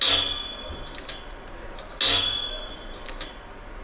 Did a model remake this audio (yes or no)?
no